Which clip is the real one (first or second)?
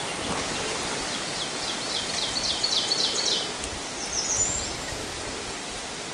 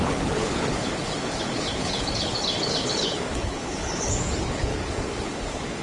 first